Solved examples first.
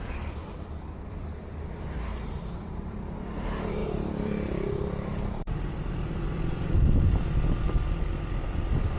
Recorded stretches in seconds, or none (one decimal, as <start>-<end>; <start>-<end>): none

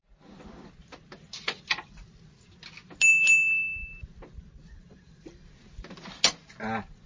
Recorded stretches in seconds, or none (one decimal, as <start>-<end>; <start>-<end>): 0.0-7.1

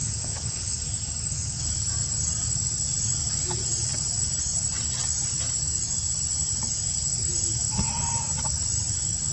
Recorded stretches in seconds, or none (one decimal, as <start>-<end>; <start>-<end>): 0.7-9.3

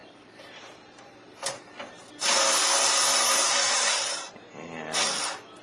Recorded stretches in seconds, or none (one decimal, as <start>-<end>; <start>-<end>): 2.0-3.1; 4.3-5.6